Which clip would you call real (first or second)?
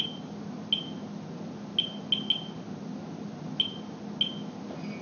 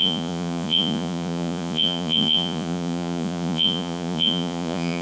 first